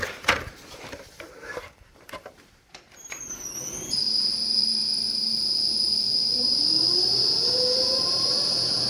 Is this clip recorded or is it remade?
remade